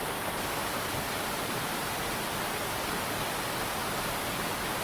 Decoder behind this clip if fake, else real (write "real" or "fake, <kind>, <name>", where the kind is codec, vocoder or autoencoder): real